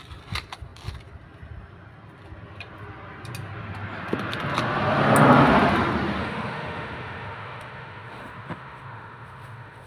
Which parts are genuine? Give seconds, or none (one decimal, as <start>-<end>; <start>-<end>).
0.0-6.2